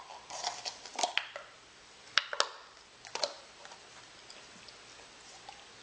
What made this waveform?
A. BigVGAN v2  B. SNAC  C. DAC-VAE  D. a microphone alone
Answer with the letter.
D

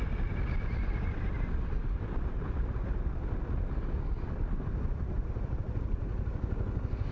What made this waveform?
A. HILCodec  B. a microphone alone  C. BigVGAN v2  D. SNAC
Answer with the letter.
B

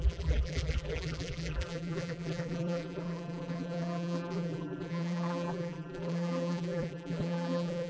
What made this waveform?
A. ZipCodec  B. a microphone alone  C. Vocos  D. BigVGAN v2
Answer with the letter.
D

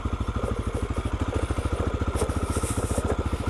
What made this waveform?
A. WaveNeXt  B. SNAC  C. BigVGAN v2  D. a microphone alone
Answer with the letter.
D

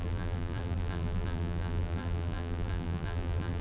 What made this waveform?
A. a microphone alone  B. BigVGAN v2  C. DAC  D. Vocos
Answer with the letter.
B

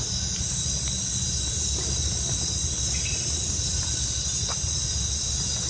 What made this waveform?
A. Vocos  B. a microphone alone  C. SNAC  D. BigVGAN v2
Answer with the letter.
B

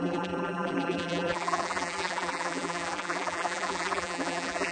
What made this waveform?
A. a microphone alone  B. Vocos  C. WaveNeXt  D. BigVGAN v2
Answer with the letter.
D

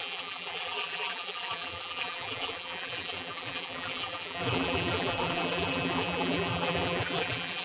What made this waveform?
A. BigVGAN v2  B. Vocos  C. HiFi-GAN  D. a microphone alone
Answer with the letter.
A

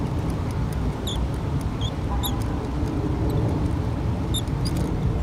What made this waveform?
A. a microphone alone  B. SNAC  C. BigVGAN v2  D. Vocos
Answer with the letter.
A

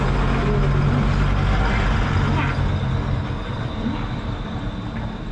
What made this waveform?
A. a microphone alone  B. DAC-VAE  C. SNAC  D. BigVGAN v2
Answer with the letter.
A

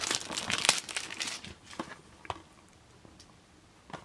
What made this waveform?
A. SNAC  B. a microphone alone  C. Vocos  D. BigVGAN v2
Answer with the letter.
B